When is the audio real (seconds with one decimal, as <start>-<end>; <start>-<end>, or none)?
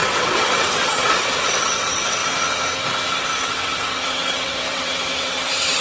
2.2-3.2